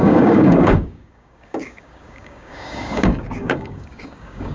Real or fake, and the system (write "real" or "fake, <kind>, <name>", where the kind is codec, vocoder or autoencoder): fake, codec, DAC